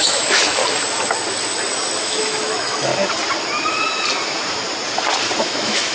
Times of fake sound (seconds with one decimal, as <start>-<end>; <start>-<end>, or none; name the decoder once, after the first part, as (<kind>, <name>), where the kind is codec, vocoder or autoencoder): 0.0-0.6 (autoencoder, DAC-VAE); 2.0-2.9; 5.4-5.9